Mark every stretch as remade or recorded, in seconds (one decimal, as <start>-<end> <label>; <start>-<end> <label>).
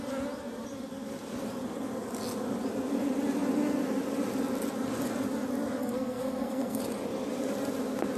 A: 0.0-5.8 recorded; 5.8-6.8 remade; 6.8-8.2 recorded